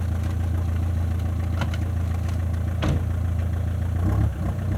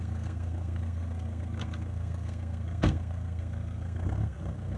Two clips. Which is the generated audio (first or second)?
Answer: second